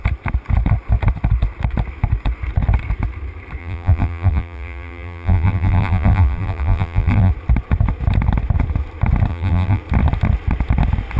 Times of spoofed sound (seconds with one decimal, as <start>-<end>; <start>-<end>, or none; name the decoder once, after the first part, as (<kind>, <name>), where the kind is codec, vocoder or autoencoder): 3.6-7.3 (vocoder, BigVGAN v2); 9.3-9.8